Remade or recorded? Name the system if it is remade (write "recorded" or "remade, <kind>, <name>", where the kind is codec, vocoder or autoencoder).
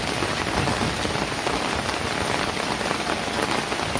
recorded